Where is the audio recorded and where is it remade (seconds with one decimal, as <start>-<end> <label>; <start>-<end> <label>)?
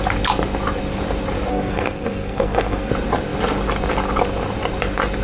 0.0-1.5 recorded; 1.5-2.9 remade; 2.9-5.2 recorded